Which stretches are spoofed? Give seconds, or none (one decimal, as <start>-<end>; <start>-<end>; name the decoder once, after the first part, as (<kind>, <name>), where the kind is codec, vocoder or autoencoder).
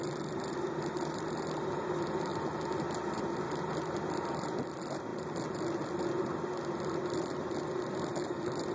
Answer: none